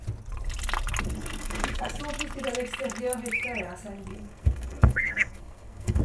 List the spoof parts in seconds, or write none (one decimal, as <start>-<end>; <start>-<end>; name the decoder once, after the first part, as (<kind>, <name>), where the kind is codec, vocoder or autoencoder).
1.2-2.0 (codec, SNAC); 4.1-6.0